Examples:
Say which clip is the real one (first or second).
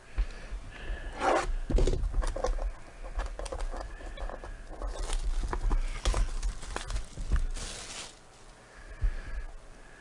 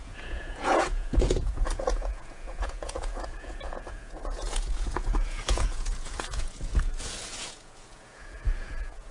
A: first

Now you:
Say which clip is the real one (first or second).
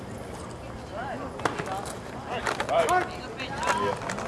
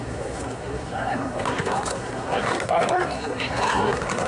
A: first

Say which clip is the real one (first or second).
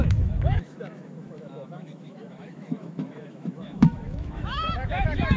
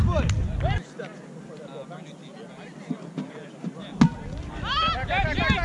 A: second